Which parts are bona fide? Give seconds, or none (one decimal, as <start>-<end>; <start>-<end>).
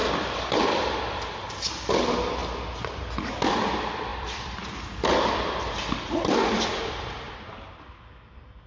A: 0.6-4.1; 8.2-8.7